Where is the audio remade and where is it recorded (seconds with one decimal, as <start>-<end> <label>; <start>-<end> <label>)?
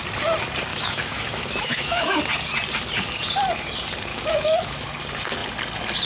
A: 0.0-0.7 recorded; 0.7-2.2 remade; 2.2-4.1 recorded; 4.1-4.9 remade; 4.9-6.1 recorded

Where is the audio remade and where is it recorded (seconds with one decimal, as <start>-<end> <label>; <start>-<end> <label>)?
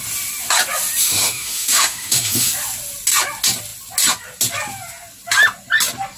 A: 0.0-1.0 recorded; 1.0-2.5 remade; 2.5-6.2 recorded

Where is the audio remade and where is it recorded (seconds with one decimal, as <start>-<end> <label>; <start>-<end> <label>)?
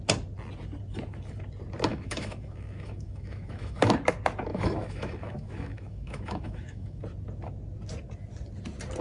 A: 0.0-1.9 recorded; 1.9-3.8 remade; 3.8-4.5 recorded; 4.5-7.0 remade; 7.0-9.0 recorded